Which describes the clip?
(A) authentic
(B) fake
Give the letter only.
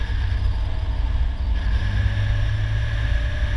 A